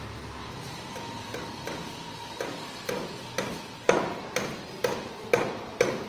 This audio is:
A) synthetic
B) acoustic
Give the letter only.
B